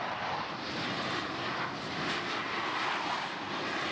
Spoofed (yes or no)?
no